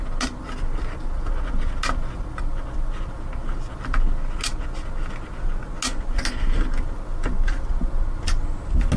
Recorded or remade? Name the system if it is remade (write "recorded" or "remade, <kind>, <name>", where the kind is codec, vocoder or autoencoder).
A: recorded